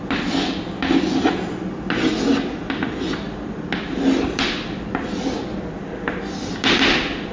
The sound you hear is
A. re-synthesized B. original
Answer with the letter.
B